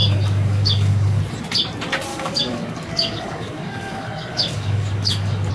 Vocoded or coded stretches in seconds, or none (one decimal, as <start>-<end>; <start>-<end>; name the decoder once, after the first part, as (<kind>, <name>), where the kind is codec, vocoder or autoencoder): 0.0-1.2 (codec, DAC); 2.1-5.5